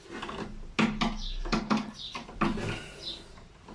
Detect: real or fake real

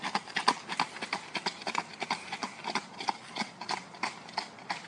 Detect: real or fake real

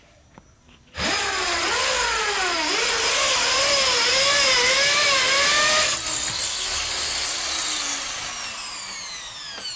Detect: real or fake real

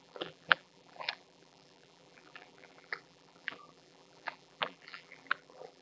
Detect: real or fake fake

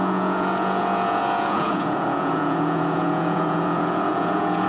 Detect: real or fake fake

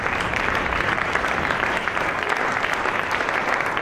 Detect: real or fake fake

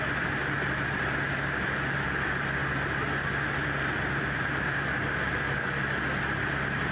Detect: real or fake real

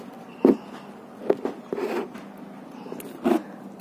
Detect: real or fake real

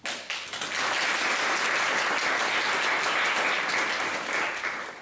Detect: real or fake real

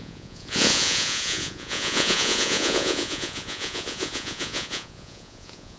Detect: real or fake fake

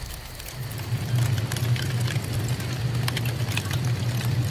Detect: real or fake real